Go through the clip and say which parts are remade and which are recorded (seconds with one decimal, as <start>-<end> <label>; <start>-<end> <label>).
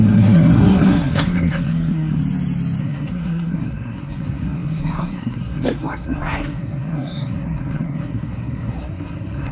0.0-2.2 remade; 2.2-2.8 recorded; 2.8-9.5 remade